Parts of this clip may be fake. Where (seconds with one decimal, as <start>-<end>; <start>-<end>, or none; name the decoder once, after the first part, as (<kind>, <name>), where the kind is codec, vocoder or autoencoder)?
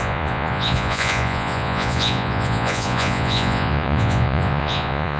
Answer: 0.0-5.2 (vocoder, Vocos)